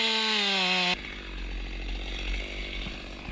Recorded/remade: recorded